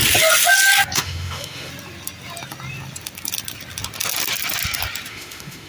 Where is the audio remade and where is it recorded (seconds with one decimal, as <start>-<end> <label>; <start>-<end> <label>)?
0.0-1.0 recorded; 1.0-1.7 remade; 1.7-5.1 recorded; 5.1-5.7 remade